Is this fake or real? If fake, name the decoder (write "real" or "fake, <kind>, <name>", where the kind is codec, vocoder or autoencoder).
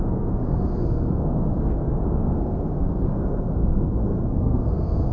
fake, codec, SNAC